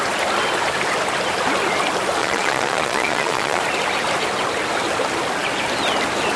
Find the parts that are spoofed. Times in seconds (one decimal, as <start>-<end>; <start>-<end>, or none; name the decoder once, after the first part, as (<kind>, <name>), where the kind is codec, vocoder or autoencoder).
2.2-3.6 (vocoder, Vocos)